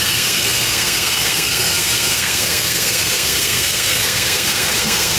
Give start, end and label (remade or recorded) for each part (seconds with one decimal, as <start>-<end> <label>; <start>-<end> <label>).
0.0-5.2 remade